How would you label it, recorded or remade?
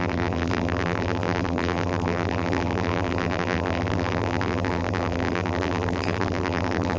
remade